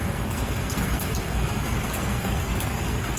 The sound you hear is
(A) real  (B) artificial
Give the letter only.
B